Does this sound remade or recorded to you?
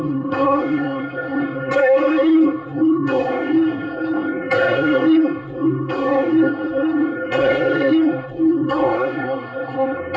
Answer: remade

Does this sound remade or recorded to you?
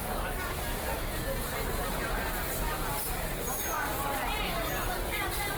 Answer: recorded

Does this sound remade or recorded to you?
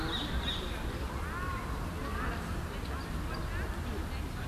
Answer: recorded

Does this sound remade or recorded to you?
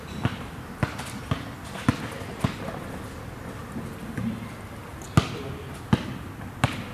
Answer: recorded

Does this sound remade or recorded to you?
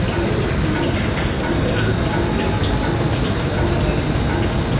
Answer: recorded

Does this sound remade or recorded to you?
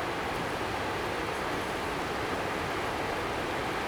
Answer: recorded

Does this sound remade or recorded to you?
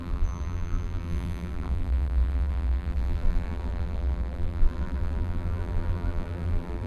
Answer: remade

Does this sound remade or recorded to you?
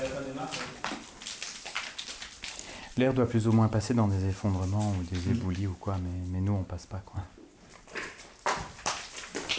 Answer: recorded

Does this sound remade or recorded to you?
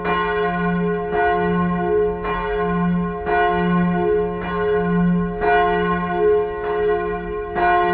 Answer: recorded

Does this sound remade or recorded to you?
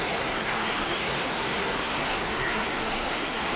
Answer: remade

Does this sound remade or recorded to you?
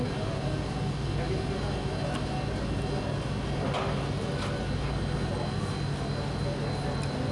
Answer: recorded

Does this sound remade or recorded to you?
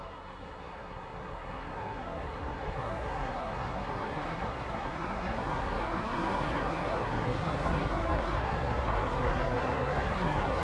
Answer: remade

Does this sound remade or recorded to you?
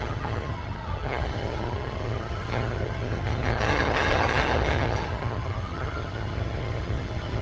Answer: remade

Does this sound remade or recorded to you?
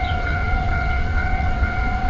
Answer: remade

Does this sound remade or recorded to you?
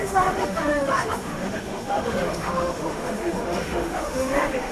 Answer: remade